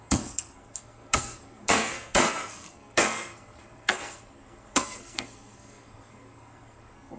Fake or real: fake